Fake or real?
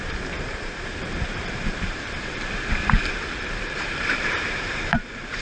fake